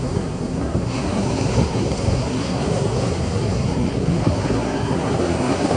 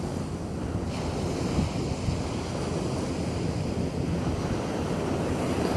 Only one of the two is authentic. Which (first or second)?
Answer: second